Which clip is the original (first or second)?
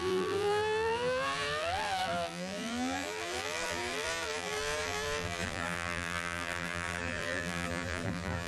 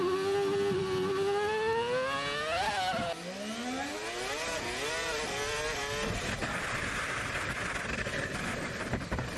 second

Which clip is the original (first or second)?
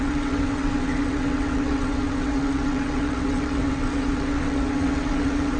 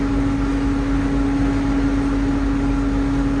second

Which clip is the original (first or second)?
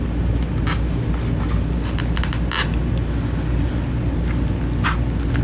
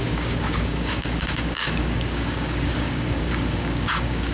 first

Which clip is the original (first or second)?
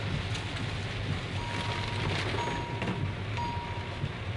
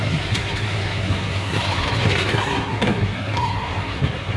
first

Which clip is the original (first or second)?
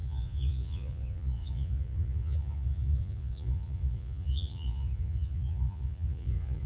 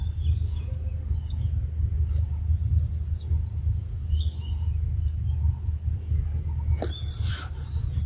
second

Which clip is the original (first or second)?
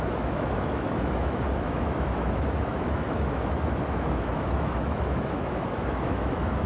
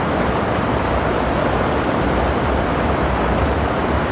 second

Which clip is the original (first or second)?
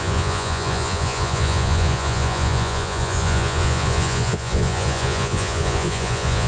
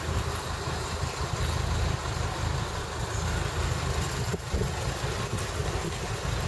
second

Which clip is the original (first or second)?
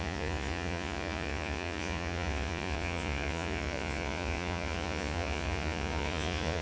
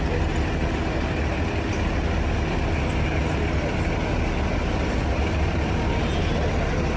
second